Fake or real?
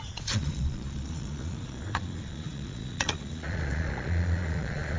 fake